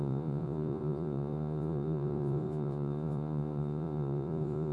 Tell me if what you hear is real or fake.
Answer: fake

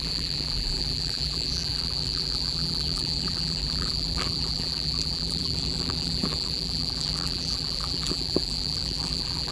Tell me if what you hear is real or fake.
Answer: fake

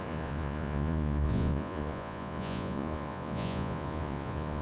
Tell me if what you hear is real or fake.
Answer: fake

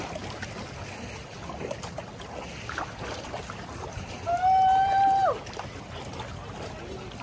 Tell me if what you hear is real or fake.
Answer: real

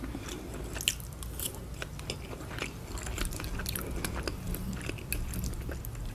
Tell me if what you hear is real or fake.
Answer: real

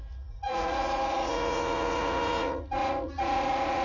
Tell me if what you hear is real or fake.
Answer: fake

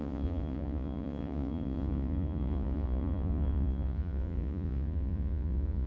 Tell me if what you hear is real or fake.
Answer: fake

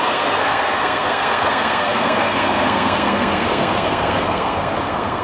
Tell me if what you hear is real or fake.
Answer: fake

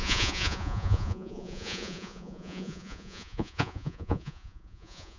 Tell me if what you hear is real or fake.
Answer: fake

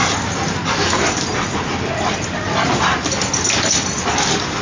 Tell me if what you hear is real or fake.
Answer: real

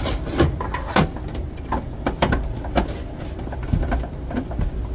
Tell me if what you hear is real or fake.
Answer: real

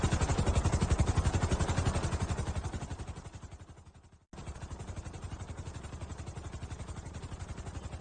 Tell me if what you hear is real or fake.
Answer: real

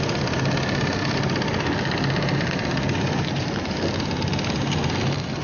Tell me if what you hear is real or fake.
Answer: real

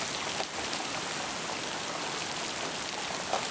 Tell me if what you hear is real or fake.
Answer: real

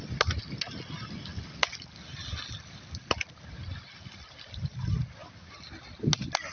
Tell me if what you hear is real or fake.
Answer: real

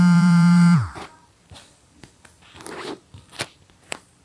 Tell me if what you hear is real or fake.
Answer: fake